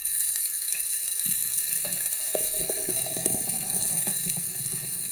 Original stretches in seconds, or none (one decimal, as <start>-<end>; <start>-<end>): none